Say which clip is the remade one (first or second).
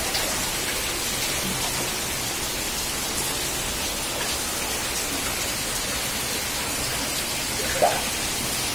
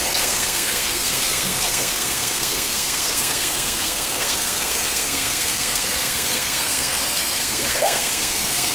second